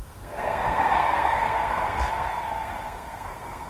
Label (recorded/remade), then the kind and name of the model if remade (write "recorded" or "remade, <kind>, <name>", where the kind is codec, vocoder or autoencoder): remade, codec, SNAC